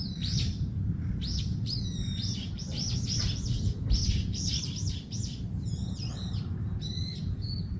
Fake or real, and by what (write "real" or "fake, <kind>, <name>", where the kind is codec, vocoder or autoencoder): fake, vocoder, BigVGAN v2